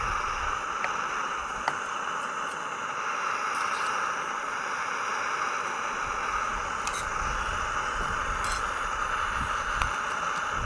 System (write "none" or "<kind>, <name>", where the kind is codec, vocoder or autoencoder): none